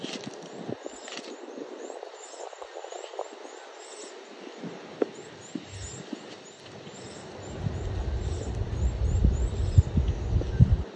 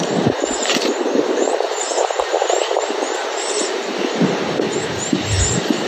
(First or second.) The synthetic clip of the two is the second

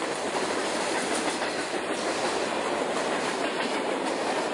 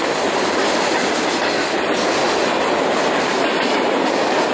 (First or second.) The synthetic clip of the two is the first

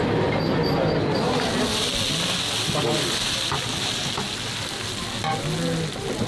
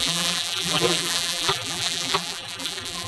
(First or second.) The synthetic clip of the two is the second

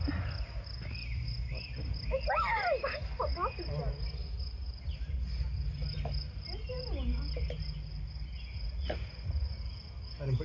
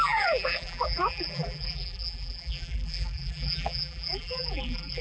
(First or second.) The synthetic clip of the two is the second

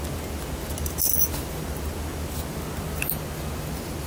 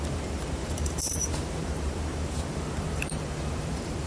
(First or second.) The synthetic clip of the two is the second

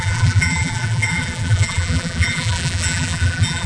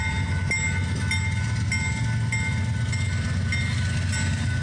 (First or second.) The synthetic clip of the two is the first